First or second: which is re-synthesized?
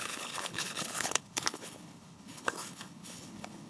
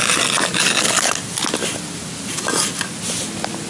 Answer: first